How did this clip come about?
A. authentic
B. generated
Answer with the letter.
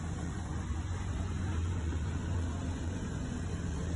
B